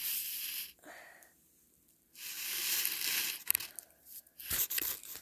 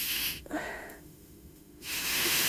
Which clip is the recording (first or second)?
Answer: first